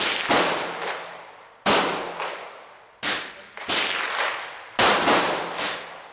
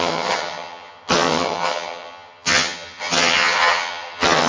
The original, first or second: first